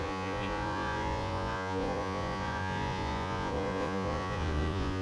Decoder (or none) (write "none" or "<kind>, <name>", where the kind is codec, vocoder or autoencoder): vocoder, Vocos